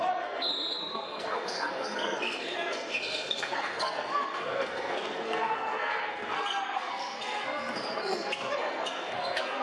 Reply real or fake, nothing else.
fake